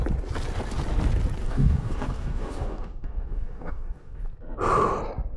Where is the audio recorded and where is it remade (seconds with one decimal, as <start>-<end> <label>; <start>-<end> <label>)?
0.0-1.4 recorded; 1.4-4.2 remade; 4.2-5.4 recorded